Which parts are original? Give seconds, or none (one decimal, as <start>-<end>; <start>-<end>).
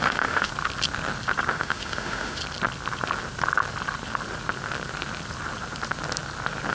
0.5-1.5; 2.4-6.7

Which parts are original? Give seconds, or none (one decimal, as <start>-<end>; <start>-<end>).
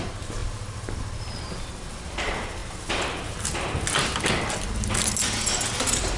0.0-6.2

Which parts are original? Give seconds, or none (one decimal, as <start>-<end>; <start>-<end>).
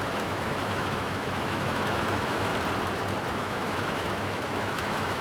2.5-3.3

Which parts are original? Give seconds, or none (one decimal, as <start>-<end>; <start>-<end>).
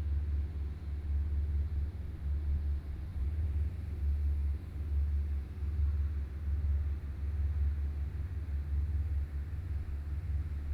0.0-3.1; 4.0-10.7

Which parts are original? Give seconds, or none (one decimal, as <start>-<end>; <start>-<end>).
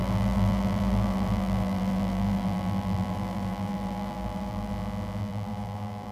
4.7-5.2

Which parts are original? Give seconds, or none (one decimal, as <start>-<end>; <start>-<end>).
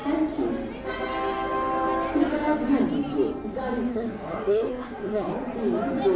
0.0-3.9; 5.3-6.2